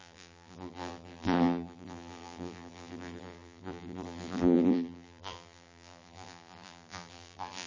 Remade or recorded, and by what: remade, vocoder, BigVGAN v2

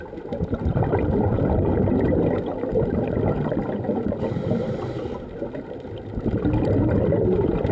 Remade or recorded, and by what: recorded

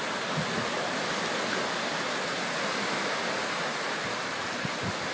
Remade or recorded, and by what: recorded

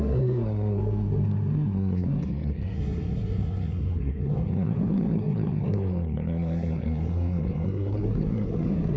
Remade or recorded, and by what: remade, codec, SNAC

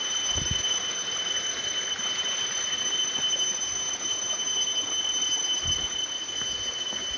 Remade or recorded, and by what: recorded